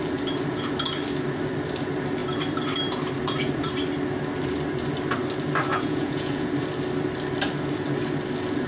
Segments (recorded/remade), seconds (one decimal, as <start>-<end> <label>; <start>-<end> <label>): 0.0-5.7 recorded; 5.7-6.5 remade; 6.5-8.7 recorded

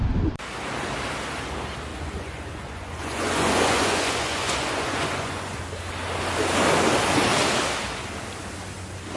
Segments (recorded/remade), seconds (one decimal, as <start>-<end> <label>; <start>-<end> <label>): 0.0-1.9 recorded; 1.9-5.6 remade; 5.6-9.2 recorded